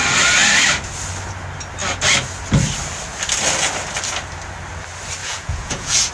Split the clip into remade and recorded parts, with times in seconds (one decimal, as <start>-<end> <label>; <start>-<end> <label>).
0.0-5.2 recorded; 5.2-6.1 remade